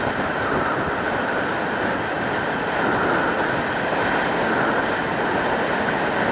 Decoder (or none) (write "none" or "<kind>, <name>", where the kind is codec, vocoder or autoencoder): none